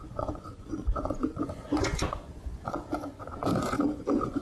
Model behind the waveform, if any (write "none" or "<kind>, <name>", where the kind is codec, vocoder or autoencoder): vocoder, Vocos